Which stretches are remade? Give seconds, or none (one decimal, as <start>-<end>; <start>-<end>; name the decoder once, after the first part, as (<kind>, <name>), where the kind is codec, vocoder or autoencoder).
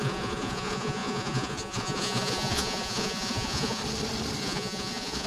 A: 0.0-3.8 (vocoder, Vocos); 4.4-5.3